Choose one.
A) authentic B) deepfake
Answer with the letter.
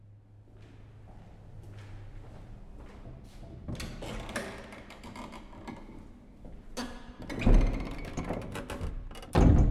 A